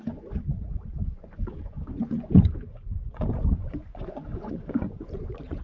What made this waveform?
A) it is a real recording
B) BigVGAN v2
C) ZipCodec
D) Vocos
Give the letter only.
D